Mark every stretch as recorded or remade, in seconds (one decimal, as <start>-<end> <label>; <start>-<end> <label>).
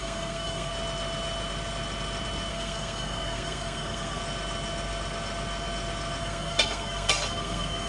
0.0-0.7 remade; 0.7-2.5 recorded; 2.5-4.2 remade; 4.2-6.2 recorded; 6.2-7.9 remade